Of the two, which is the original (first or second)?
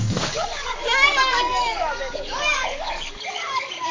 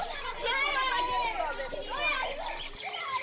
second